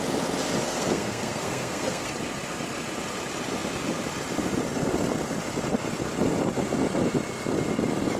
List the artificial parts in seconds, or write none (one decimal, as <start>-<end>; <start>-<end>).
0.6-2.1